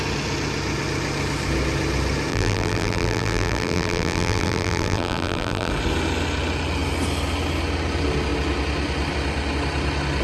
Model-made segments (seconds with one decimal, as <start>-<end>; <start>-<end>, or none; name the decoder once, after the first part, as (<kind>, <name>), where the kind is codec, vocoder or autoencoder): 2.3-5.7 (vocoder, BigVGAN v2)